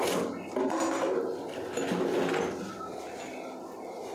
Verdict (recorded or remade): recorded